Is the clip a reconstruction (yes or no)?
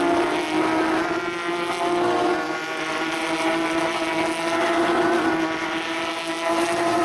no